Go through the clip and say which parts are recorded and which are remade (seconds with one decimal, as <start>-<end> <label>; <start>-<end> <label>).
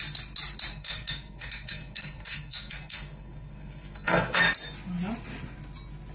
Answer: 0.0-0.7 recorded; 0.7-4.4 remade; 4.4-6.1 recorded